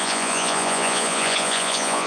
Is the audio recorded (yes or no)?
no